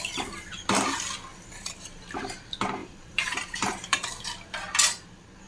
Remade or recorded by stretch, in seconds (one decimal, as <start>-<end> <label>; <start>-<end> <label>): 0.0-1.3 recorded; 1.3-2.2 remade; 2.2-2.8 recorded; 2.8-4.2 remade; 4.2-5.5 recorded